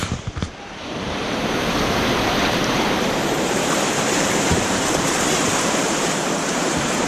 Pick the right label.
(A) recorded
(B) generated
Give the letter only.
B